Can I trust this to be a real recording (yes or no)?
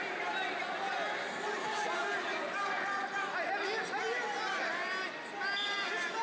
yes